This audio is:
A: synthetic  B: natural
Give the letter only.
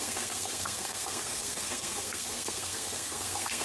A